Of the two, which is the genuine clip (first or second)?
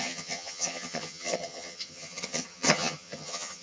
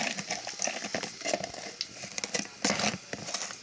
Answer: second